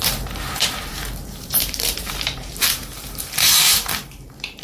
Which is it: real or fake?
fake